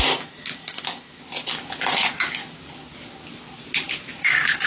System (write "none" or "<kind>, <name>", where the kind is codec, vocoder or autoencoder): none